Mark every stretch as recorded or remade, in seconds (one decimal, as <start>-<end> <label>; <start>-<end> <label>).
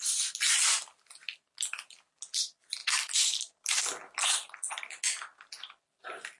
0.0-6.4 recorded